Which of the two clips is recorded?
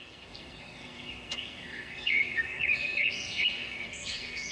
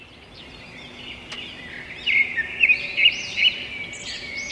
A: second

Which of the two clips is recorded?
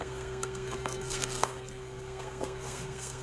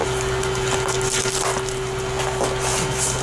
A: second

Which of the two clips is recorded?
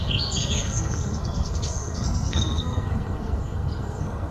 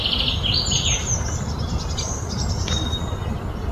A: second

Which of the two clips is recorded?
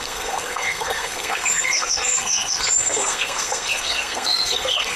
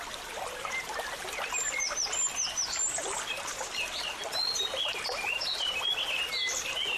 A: second